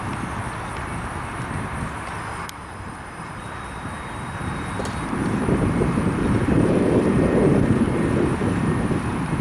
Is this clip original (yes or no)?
no